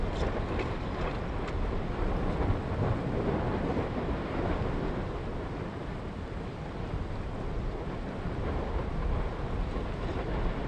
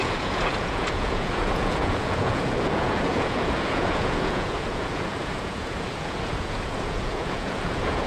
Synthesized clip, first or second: second